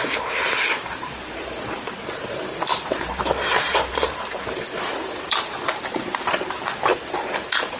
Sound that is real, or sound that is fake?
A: fake